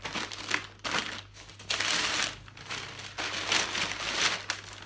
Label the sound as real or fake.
real